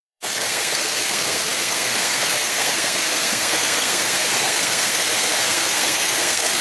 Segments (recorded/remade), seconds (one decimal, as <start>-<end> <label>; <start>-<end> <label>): 0.0-6.6 remade